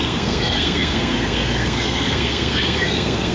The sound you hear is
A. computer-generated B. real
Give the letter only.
A